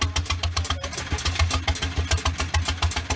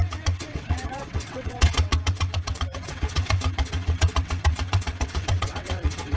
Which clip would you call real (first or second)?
first